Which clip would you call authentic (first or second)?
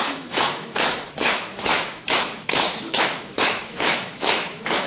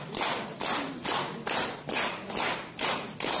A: second